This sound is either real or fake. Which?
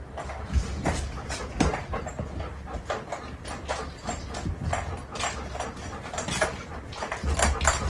real